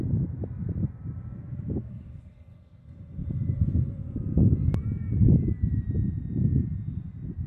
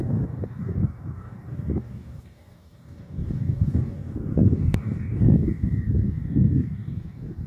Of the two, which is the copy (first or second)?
second